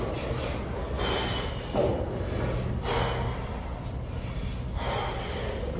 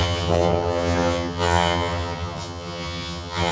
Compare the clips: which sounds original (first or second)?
first